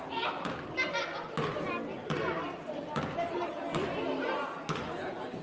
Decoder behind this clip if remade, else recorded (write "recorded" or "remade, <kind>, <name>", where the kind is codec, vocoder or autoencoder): recorded